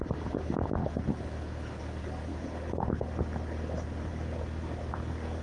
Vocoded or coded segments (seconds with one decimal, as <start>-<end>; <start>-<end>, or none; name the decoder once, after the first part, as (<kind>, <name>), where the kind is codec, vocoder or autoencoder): 0.8-1.8 (codec, HILCodec); 2.3-2.9